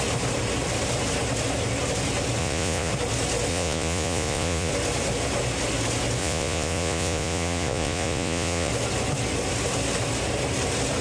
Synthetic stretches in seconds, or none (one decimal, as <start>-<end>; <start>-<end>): 2.4-2.9; 3.5-4.7; 6.2-8.7